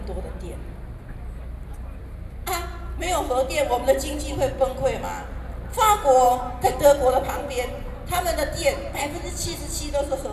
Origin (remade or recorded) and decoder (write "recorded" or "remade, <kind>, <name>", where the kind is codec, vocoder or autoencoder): recorded